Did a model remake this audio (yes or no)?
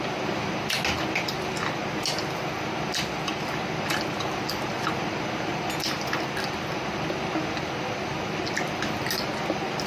no